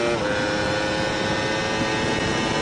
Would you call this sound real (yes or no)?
yes